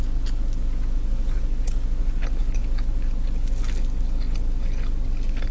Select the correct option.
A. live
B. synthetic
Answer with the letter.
A